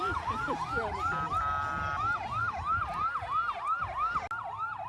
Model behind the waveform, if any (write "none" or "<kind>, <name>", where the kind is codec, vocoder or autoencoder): none